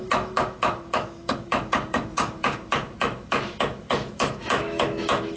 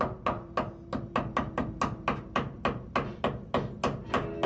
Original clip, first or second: second